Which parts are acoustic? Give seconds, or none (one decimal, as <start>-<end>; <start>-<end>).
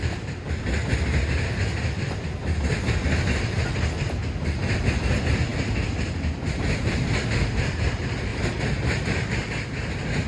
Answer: 0.0-8.3; 9.5-10.3